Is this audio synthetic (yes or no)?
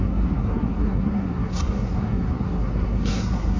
yes